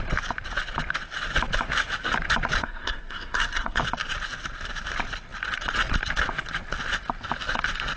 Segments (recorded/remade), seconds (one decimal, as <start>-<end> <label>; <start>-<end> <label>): 0.0-2.6 recorded; 2.6-3.8 remade; 3.8-8.0 recorded

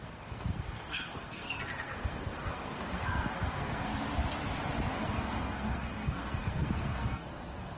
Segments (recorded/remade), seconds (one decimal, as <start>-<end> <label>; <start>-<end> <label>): 0.0-3.9 remade; 3.9-4.9 recorded; 4.9-7.8 remade

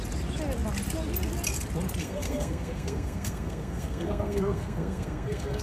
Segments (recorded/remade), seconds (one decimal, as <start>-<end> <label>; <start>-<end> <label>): 0.0-2.0 recorded; 2.0-5.6 remade

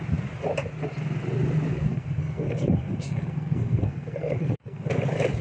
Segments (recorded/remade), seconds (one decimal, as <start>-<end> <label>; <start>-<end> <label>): 0.0-1.7 recorded; 1.7-4.9 remade; 4.9-5.4 recorded

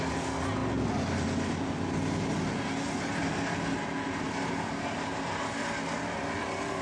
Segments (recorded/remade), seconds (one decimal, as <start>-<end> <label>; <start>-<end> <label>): 0.0-6.8 recorded

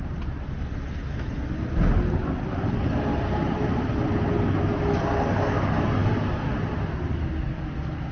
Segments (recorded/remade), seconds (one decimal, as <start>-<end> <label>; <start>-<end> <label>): 0.0-8.1 recorded